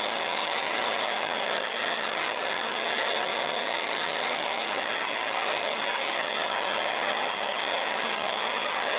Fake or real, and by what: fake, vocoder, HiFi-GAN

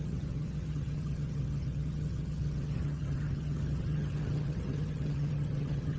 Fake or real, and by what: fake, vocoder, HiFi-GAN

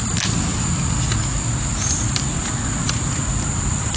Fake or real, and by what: real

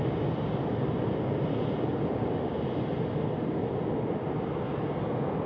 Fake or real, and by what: real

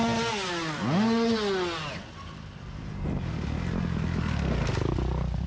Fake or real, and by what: real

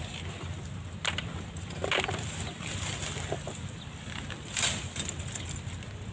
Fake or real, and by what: real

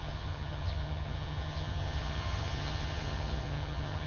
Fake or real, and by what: fake, vocoder, HiFi-GAN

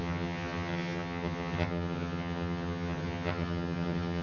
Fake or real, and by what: fake, vocoder, HiFi-GAN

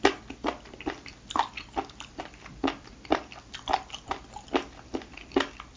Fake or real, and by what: real